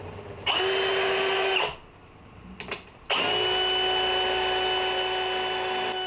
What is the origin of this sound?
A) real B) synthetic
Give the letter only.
A